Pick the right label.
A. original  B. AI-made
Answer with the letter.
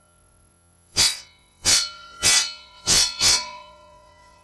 B